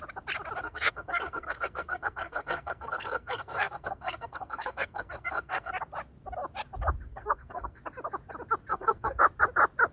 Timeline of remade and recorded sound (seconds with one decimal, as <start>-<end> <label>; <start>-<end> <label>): 0.0-0.6 recorded; 0.6-5.7 remade; 5.7-7.1 recorded; 7.1-7.8 remade; 7.8-8.7 recorded; 8.7-9.2 remade; 9.2-9.9 recorded